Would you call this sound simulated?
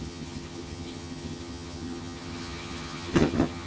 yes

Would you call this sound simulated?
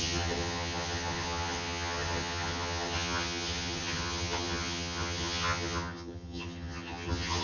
yes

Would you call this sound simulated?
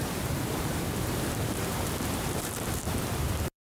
yes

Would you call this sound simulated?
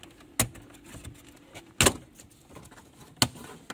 no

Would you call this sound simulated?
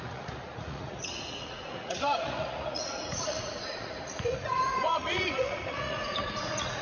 yes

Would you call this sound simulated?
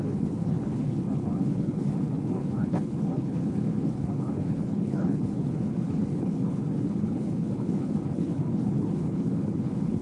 yes